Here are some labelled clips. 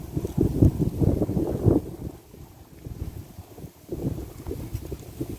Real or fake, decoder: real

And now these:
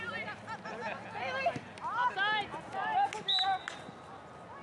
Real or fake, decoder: real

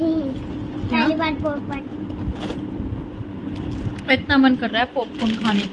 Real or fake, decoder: real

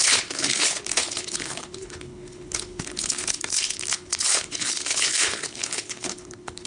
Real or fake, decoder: fake, codec, HILCodec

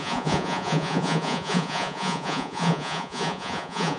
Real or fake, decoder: fake, vocoder, Vocos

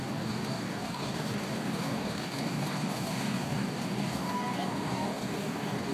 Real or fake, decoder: fake, codec, DAC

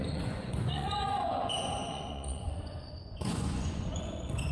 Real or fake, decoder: fake, vocoder, Vocos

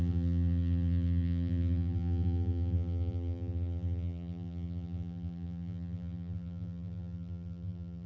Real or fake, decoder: fake, vocoder, BigVGAN v2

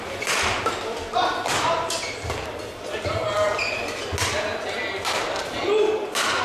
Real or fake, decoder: real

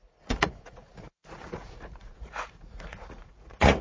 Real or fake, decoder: fake, vocoder, Vocos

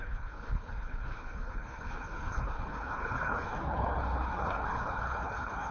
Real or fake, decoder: fake, codec, HILCodec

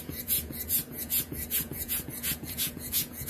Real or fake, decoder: fake, vocoder, Vocos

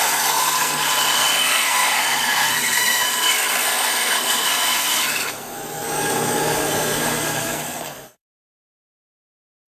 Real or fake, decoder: fake, codec, SNAC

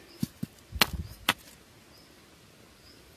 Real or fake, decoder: real